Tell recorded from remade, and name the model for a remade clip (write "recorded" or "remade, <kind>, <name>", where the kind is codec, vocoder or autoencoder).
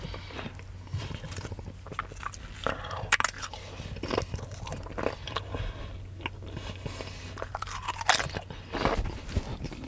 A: recorded